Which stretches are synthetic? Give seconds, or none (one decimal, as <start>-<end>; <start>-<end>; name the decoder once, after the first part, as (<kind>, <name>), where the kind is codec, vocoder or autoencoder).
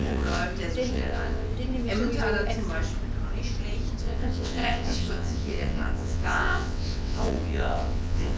0.0-0.4 (vocoder, WaveNeXt); 0.9-1.5; 4.0-8.4